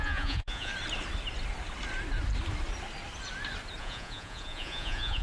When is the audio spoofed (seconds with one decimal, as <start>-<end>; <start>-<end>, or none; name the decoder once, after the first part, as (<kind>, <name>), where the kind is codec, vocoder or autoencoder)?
0.0-0.7 (vocoder, Vocos); 3.8-5.2